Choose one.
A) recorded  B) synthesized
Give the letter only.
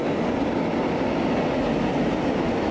A